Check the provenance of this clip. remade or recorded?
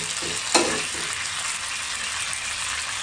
recorded